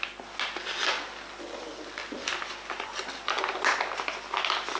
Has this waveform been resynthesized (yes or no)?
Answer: no